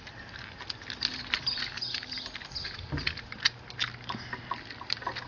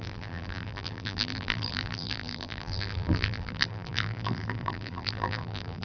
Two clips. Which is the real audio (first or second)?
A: first